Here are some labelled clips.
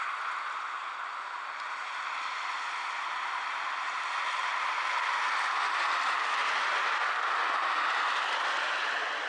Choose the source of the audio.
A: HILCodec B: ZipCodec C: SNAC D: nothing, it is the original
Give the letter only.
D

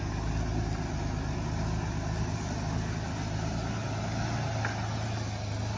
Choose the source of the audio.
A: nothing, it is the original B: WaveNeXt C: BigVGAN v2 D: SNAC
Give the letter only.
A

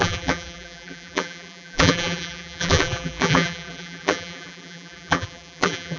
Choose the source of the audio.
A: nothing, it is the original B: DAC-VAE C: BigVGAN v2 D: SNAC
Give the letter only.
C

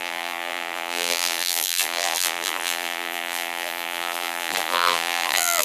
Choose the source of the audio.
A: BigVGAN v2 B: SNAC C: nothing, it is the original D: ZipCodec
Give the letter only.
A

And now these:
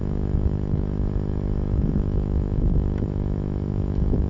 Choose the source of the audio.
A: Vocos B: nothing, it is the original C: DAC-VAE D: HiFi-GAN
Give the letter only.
C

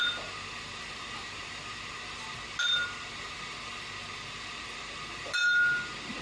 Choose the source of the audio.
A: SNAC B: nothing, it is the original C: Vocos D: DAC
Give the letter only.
B